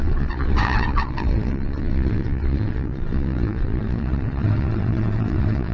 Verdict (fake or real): fake